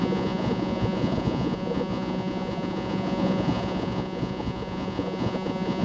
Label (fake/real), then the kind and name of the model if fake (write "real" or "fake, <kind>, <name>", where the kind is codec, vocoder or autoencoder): fake, vocoder, Vocos